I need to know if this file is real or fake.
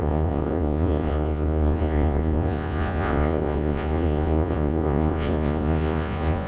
fake